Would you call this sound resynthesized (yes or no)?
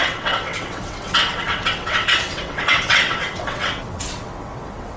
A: yes